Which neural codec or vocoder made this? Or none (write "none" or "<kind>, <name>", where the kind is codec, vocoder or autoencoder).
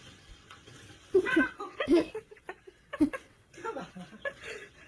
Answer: vocoder, WaveNeXt